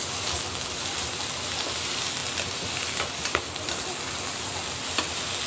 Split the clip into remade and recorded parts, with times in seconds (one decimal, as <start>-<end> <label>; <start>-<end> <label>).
0.0-5.5 recorded